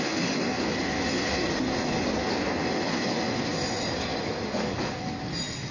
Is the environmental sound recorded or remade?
recorded